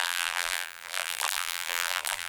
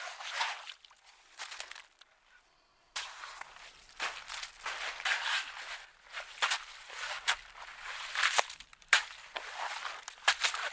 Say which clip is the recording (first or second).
second